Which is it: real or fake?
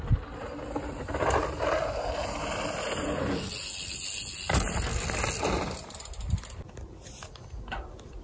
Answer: real